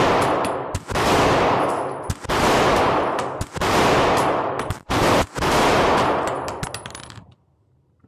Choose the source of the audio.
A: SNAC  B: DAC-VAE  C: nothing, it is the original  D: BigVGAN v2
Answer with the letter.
C